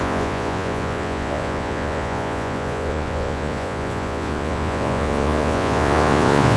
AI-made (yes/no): yes